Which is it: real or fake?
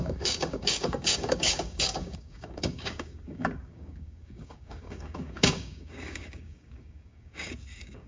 fake